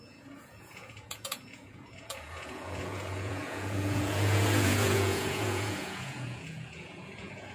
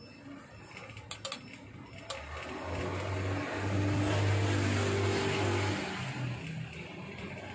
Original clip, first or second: second